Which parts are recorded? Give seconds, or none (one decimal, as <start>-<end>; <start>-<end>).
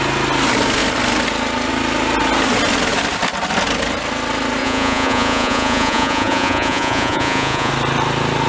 0.0-4.6; 7.7-8.5